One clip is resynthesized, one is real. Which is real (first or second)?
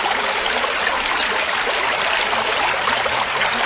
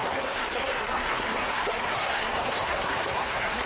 first